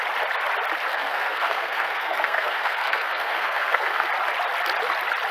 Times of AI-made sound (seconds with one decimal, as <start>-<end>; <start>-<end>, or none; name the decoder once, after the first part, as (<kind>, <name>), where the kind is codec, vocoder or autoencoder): 0.9-4.1 (codec, SNAC)

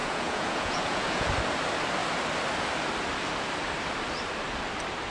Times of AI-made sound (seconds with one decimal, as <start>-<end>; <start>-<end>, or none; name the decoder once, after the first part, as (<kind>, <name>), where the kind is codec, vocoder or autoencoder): 0.0-1.3 (vocoder, Vocos)

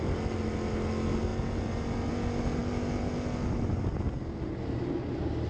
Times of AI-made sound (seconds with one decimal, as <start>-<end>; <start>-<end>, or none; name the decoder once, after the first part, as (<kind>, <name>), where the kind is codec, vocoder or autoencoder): 1.3-2.1 (vocoder, BigVGAN v2)

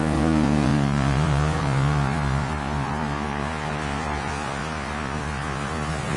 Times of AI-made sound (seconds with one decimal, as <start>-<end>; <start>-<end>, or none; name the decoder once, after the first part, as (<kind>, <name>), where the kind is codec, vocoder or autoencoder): 0.0-6.2 (vocoder, Vocos)

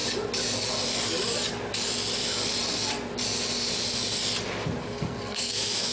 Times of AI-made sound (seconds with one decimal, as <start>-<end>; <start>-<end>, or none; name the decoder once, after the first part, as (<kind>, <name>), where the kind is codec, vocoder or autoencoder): 4.8-5.9 (codec, SNAC)

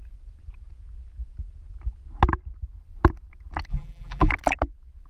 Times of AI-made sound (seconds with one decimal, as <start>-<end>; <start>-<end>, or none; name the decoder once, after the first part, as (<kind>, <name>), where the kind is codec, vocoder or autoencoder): 3.7-4.3 (vocoder, BigVGAN v2)